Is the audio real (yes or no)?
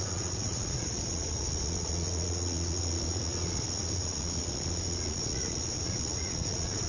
no